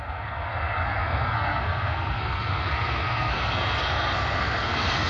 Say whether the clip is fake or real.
fake